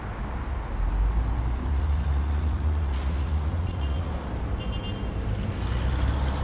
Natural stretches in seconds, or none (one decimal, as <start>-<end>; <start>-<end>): 0.0-1.7; 4.1-6.4